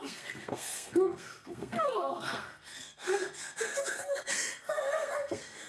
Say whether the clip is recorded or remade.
remade